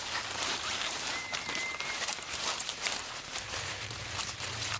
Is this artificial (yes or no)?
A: yes